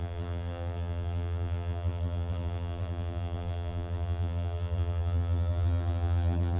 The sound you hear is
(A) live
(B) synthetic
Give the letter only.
B